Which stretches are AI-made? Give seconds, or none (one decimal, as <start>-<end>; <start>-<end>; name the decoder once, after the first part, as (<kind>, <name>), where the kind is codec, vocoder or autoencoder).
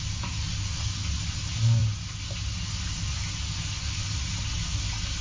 none